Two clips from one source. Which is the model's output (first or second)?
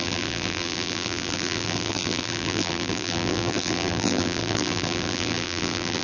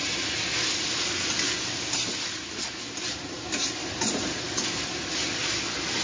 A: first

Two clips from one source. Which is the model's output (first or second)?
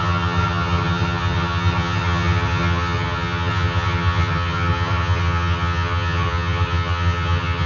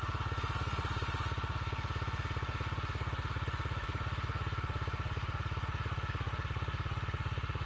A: first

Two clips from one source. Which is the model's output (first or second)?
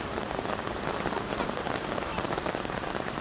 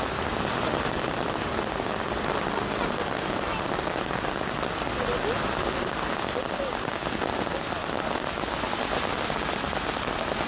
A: first